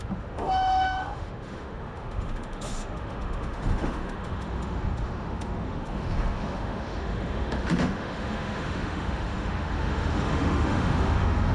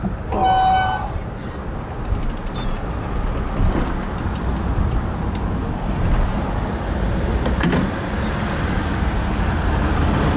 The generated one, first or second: first